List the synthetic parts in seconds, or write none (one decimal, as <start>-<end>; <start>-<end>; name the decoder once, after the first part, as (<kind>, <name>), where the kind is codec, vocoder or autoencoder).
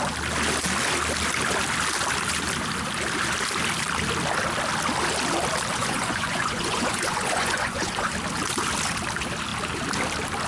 5.8-8.1 (vocoder, Vocos)